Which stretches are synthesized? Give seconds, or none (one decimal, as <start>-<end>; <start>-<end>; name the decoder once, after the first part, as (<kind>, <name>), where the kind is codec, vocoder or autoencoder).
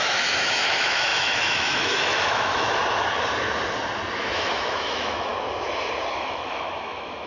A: 0.0-2.8 (autoencoder, DAC-VAE); 4.2-5.3; 6.1-7.3